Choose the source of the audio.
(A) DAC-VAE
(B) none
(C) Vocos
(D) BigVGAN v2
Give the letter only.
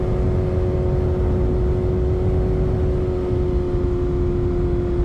B